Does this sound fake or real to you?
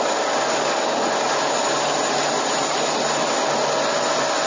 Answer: real